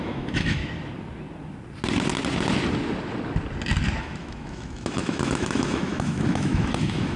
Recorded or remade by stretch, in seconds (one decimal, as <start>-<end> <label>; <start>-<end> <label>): 0.0-0.6 remade; 0.6-4.0 recorded; 4.0-7.2 remade